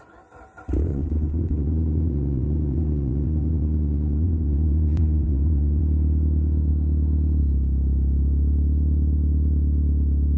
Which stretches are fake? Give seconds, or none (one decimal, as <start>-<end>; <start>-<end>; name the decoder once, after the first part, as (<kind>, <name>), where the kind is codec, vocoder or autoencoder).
0.9-5.8 (vocoder, Vocos)